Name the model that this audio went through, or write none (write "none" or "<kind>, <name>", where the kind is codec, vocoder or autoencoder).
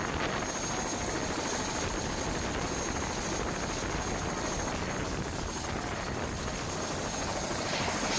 none